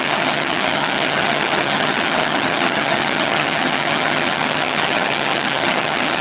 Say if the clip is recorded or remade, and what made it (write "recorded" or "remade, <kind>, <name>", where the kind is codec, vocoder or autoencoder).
remade, vocoder, HiFi-GAN